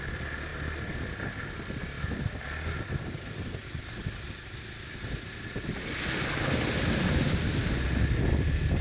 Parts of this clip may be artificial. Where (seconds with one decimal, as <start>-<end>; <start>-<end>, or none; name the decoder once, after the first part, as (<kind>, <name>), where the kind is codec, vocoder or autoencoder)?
none